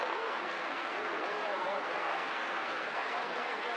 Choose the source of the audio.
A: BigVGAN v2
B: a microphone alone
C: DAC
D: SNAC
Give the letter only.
D